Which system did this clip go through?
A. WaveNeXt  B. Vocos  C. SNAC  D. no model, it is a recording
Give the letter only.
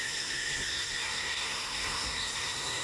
C